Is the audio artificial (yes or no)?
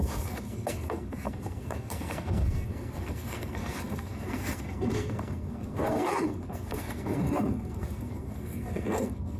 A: yes